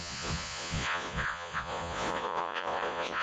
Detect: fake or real fake